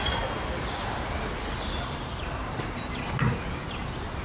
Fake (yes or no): no